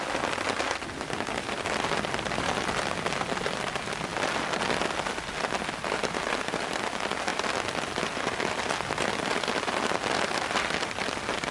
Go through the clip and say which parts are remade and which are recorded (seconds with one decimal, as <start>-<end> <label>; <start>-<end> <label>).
0.0-11.5 recorded